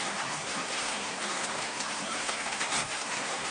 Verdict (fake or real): fake